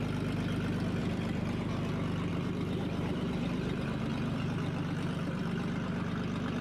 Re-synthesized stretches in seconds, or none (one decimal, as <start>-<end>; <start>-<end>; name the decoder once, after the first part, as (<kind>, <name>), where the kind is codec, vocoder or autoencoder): 1.0-1.9 (vocoder, BigVGAN v2); 2.3-6.1